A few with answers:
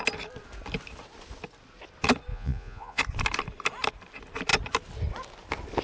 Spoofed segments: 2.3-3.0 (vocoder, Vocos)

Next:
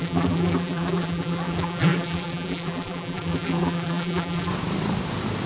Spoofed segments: 0.0-4.5 (vocoder, BigVGAN v2)

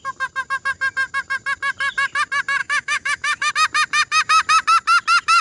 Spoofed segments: 2.6-3.5 (autoencoder, DAC-VAE)